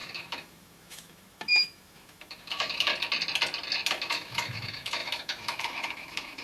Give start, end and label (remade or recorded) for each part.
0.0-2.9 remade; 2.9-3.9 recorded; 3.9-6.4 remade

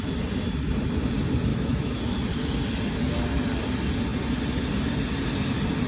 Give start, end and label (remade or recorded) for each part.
0.0-1.5 recorded; 1.5-2.0 remade; 2.0-5.9 recorded

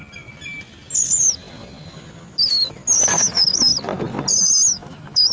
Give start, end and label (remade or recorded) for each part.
0.0-3.0 recorded; 3.0-3.7 remade; 3.7-4.3 recorded; 4.3-5.3 remade

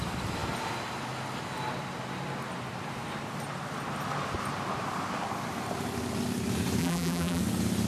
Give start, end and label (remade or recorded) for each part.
0.0-6.8 recorded; 6.8-7.4 remade; 7.4-7.9 recorded

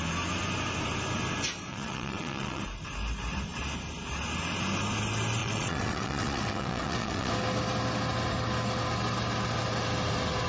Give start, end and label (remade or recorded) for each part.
0.0-1.7 recorded; 1.7-2.6 remade; 2.6-5.4 recorded; 5.4-7.3 remade; 7.3-10.5 recorded

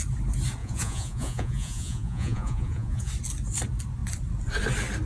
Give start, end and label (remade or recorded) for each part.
0.0-0.6 recorded; 0.6-3.1 remade; 3.1-5.1 recorded

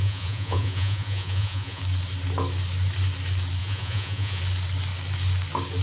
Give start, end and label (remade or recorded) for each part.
0.0-1.8 remade; 1.8-3.6 recorded; 3.6-4.4 remade; 4.4-5.8 recorded